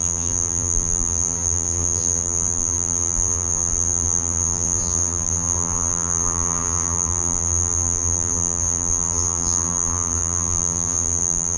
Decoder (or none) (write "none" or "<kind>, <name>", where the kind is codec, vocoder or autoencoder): vocoder, BigVGAN v2